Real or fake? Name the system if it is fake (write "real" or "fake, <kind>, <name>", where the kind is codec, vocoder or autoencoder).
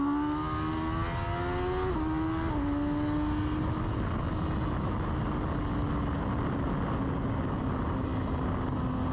real